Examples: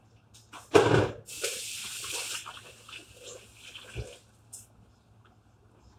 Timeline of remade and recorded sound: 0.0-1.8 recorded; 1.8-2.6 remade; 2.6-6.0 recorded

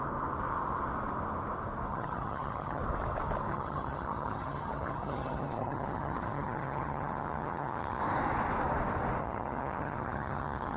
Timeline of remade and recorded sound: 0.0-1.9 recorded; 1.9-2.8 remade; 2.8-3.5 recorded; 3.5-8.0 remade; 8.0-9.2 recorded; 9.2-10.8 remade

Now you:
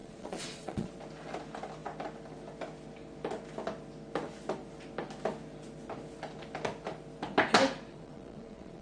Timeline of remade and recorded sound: 0.0-0.9 remade; 0.9-7.9 recorded; 7.9-8.8 remade

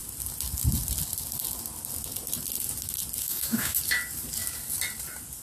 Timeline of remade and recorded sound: 0.0-3.2 recorded; 3.2-3.8 remade; 3.8-5.4 recorded